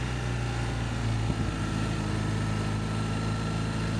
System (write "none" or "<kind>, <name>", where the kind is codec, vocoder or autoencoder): none